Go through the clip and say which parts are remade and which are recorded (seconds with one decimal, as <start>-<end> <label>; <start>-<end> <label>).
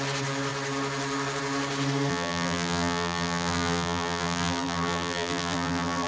0.0-2.1 recorded; 2.1-6.1 remade